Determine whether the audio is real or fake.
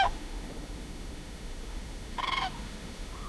fake